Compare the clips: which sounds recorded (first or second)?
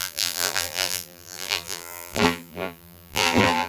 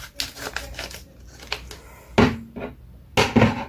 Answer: second